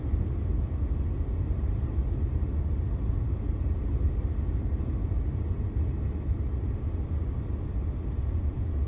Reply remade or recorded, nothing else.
recorded